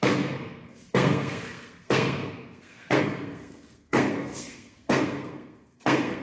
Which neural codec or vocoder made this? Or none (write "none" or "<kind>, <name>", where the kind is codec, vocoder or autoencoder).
codec, SNAC